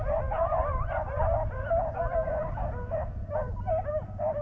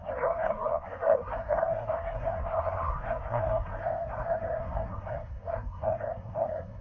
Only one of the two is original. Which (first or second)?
first